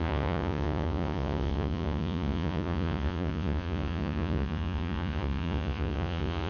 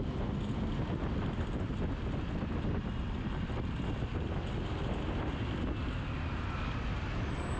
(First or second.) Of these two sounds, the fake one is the first